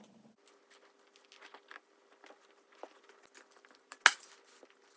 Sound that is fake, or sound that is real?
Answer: real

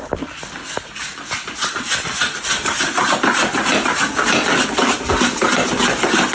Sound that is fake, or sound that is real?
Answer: real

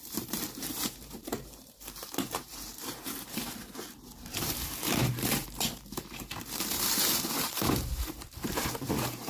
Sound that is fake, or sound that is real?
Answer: fake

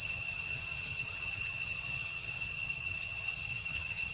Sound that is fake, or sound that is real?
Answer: fake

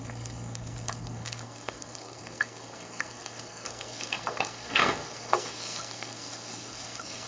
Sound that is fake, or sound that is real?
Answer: fake